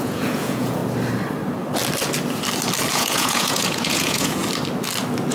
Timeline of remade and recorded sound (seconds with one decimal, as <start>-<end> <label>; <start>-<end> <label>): 0.0-0.8 remade; 0.8-2.9 recorded; 2.9-4.4 remade; 4.4-5.3 recorded